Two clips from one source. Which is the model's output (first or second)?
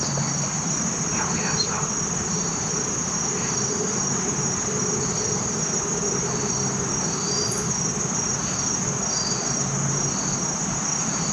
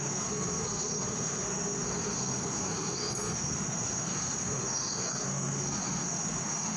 second